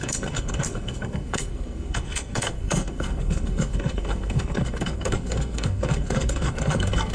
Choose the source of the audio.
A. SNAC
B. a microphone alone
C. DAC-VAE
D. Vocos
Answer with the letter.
A